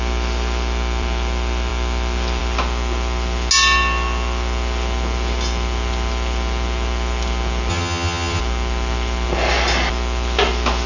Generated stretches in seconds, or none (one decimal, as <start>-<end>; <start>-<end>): 7.7-8.4